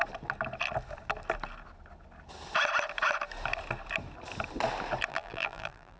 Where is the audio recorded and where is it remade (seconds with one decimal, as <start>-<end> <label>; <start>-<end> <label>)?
0.0-5.1 recorded; 5.1-6.0 remade